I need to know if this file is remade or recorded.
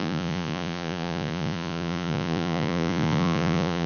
remade